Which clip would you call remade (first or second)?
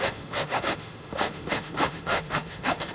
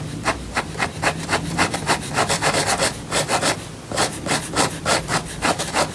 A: first